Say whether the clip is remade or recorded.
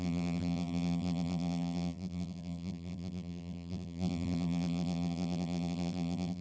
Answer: remade